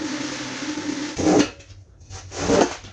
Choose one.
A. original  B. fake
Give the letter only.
A